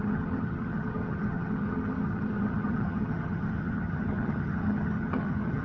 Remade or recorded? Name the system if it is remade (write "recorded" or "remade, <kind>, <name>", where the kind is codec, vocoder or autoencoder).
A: remade, vocoder, HiFi-GAN